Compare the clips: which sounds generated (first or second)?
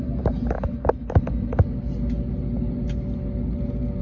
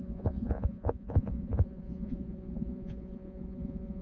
second